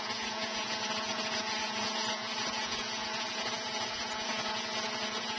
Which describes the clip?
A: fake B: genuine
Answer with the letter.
A